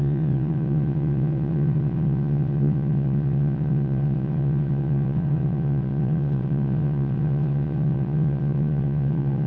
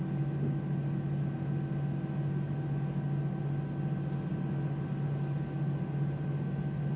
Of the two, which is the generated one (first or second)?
first